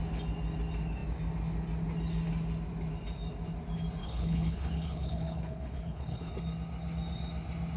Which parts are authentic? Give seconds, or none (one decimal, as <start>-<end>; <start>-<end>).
0.0-4.0; 6.3-7.8